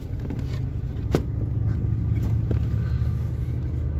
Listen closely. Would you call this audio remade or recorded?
recorded